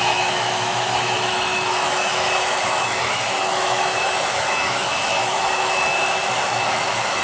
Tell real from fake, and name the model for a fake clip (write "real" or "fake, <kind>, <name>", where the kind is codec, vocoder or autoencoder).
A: fake, autoencoder, DAC-VAE